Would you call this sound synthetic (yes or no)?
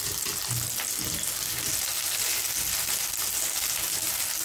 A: no